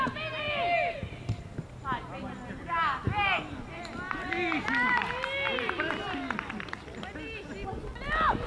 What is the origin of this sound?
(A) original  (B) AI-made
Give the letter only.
A